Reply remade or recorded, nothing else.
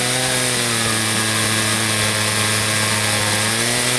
recorded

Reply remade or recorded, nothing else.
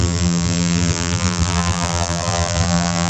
remade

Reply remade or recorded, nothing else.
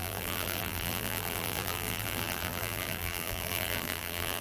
remade